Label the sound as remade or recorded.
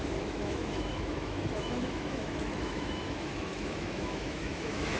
remade